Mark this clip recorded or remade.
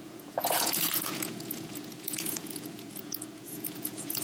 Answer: remade